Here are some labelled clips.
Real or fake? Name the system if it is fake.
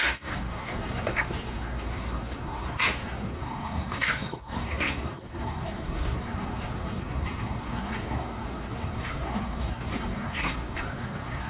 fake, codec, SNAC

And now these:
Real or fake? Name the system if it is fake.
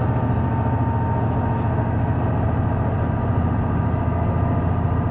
real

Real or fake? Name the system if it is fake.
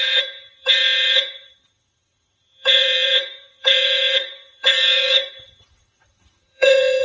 fake, vocoder, WaveNeXt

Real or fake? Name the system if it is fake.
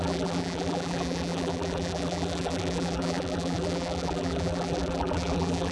fake, vocoder, BigVGAN v2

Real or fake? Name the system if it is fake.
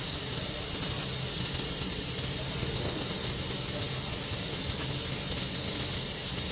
real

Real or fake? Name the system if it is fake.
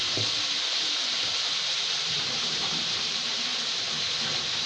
fake, vocoder, BigVGAN v2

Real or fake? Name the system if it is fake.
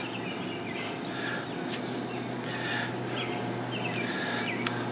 real